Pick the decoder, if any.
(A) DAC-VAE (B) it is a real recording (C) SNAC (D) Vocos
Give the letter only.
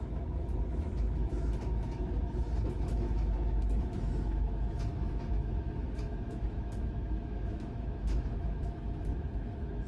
A